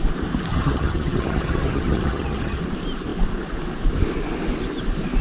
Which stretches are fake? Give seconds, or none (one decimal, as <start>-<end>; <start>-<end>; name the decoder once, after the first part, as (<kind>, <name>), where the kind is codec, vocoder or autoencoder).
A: 0.5-2.6 (vocoder, HiFi-GAN)

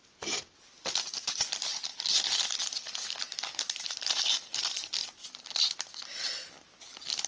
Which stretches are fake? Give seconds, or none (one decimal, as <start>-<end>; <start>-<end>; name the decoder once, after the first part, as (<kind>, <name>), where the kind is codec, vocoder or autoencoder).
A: 1.9-3.2 (vocoder, BigVGAN v2)